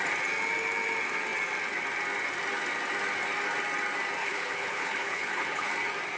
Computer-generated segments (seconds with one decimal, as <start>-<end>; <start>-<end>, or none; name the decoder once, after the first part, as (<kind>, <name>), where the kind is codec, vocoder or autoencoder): 4.2-5.7 (codec, HILCodec)